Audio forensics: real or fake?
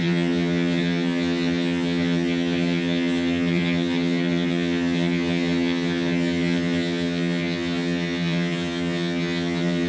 fake